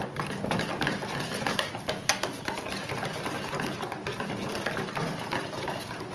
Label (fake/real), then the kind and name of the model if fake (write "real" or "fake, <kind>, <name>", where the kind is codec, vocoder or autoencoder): real